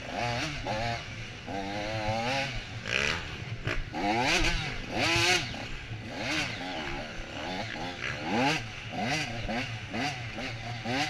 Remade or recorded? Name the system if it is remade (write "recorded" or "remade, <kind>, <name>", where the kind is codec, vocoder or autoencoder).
recorded